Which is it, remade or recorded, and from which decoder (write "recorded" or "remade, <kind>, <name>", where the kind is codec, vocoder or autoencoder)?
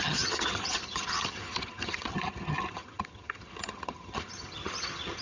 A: remade, vocoder, HiFi-GAN